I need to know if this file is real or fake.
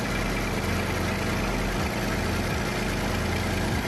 real